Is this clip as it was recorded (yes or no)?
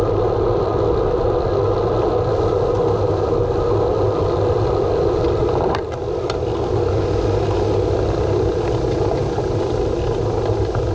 yes